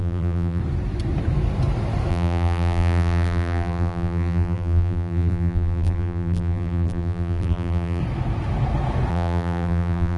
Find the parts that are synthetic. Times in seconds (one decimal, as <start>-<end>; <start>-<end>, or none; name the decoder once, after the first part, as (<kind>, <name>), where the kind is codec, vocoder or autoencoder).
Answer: 0.0-0.6 (vocoder, BigVGAN v2); 2.1-8.0; 9.1-10.2